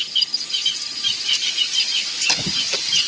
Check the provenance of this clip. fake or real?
real